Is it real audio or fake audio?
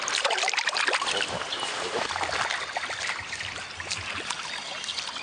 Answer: real